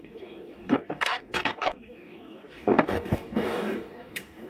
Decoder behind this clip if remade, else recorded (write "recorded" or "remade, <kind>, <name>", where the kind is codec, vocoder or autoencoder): remade, codec, DAC